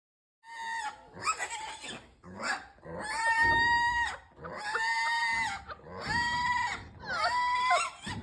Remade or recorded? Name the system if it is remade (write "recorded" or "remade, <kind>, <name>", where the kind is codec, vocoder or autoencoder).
recorded